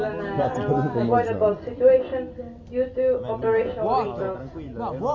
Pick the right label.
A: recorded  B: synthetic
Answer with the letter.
A